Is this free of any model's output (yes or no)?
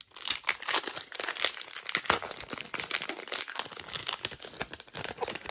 yes